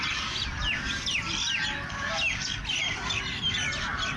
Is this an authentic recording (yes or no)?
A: yes